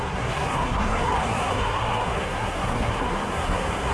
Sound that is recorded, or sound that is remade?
remade